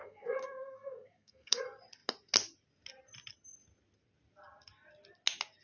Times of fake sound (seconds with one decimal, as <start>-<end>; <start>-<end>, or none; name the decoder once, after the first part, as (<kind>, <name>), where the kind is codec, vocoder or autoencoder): 0.0-1.6 (codec, SNAC)